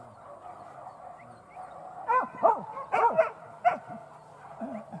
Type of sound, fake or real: real